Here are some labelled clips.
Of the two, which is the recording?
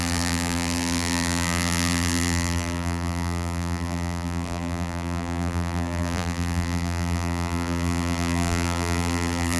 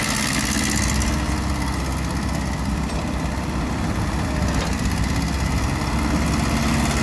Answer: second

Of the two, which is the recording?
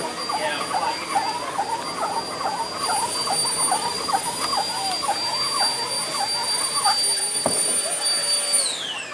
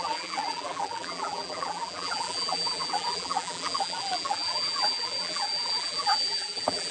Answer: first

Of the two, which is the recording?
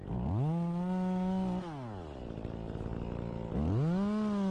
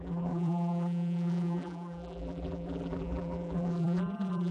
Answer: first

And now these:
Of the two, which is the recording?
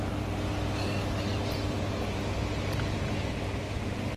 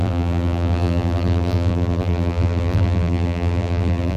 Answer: first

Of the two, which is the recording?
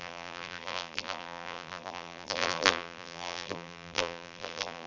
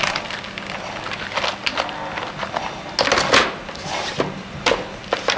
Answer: second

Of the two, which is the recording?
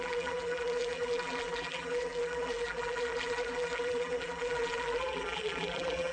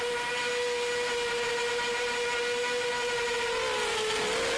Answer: second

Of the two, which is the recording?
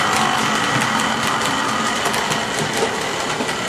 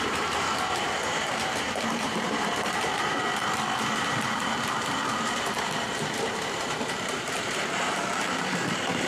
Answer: first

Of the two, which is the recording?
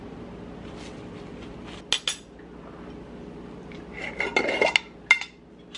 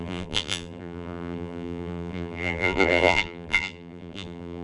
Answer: first